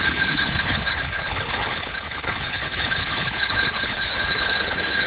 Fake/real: fake